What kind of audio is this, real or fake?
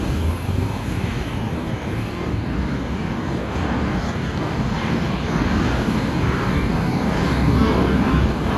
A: fake